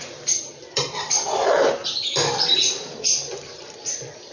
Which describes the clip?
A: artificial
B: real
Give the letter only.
A